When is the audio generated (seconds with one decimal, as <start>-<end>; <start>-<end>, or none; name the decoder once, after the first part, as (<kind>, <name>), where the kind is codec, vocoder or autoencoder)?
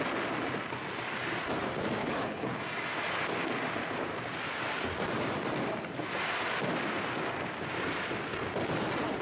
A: 2.0-2.6 (codec, HILCodec)